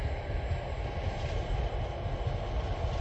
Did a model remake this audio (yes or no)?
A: no